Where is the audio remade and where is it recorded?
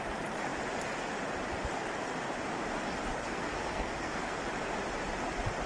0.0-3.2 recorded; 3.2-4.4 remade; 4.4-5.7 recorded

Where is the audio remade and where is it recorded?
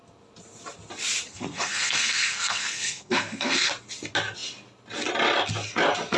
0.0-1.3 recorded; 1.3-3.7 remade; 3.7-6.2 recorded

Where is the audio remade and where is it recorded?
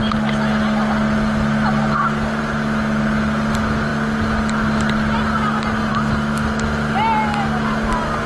0.0-8.3 recorded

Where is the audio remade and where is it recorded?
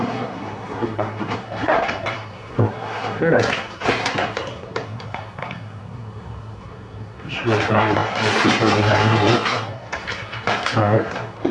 0.0-11.5 remade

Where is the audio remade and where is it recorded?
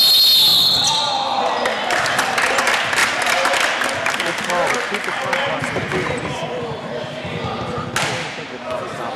0.0-9.2 recorded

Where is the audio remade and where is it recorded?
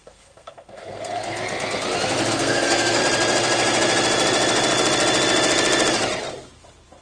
0.0-1.2 remade; 1.2-2.3 recorded; 2.3-3.0 remade; 3.0-7.0 recorded